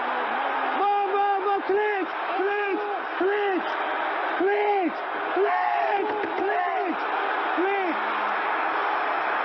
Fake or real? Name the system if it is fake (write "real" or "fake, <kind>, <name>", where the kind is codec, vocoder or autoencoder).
real